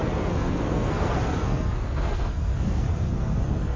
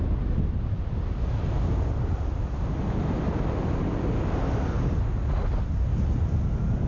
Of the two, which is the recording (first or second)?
second